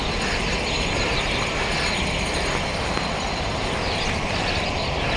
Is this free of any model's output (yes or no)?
yes